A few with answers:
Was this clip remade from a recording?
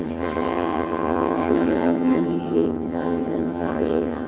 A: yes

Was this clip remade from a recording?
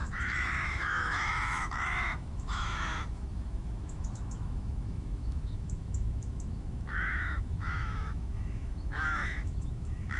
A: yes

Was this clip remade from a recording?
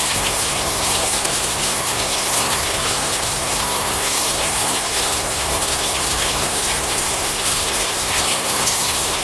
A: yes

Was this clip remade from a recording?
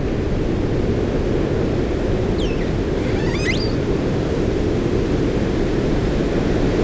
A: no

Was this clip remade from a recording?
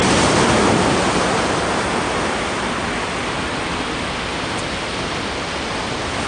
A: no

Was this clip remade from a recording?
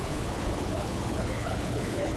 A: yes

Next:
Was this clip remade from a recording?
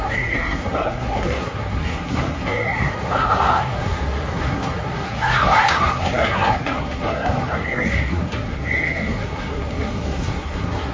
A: yes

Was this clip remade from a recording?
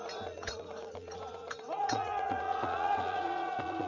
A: yes